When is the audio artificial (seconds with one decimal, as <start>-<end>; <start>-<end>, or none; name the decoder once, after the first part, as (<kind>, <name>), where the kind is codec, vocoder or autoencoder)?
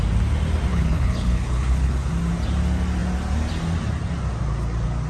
0.7-2.1 (codec, HILCodec)